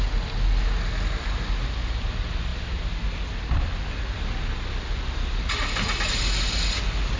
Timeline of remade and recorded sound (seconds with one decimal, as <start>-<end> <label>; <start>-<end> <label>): 0.0-7.2 recorded